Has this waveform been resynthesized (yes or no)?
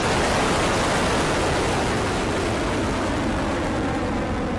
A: no